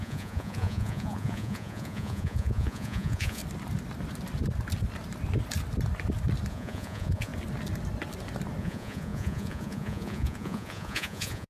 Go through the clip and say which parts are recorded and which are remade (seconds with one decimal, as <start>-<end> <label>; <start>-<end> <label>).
0.0-3.4 remade; 3.4-6.5 recorded; 6.5-7.3 remade; 7.3-8.6 recorded; 8.6-11.5 remade